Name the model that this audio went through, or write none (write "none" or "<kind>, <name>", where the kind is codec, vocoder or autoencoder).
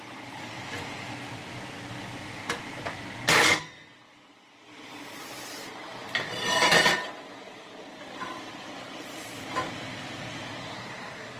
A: none